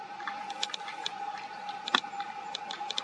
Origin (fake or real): real